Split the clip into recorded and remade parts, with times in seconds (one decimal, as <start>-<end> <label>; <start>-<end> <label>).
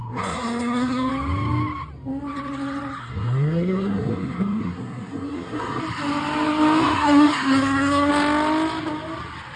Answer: 0.0-1.1 remade; 1.1-3.0 recorded; 3.0-5.8 remade; 5.8-6.8 recorded; 6.8-8.1 remade; 8.1-9.6 recorded